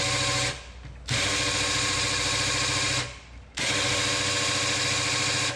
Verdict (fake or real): real